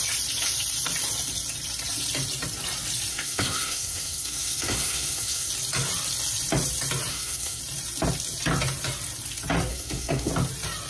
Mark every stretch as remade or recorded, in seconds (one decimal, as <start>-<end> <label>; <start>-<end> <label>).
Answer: 0.0-3.1 recorded; 3.1-5.5 remade; 5.5-7.1 recorded; 7.1-7.6 remade; 7.6-9.7 recorded; 9.7-10.3 remade; 10.3-10.9 recorded